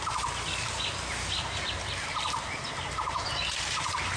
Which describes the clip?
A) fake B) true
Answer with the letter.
B